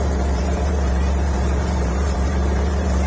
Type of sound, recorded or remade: remade